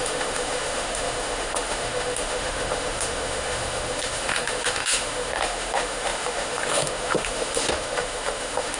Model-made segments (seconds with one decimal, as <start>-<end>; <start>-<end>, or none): 0.0-8.8